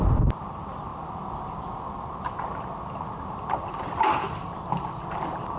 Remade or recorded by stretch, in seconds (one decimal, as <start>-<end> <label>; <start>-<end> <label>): 0.0-0.9 recorded; 0.9-4.3 remade; 4.3-5.6 recorded